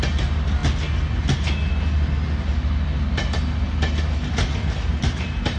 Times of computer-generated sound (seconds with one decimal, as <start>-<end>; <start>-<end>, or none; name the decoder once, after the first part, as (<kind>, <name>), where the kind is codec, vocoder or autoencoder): 4.9-5.6 (vocoder, BigVGAN v2)

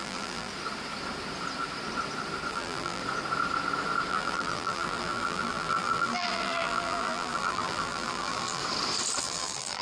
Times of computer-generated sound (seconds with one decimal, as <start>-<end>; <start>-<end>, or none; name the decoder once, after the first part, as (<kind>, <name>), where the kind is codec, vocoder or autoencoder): 0.0-0.5 (vocoder, BigVGAN v2); 2.5-3.0; 4.1-8.6; 9.2-9.8